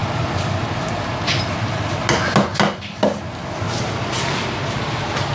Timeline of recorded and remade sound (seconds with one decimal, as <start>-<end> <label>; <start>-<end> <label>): 0.0-5.3 recorded